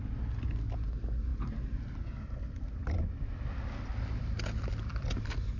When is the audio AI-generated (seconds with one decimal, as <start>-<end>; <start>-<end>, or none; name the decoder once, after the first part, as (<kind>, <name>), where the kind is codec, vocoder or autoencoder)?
none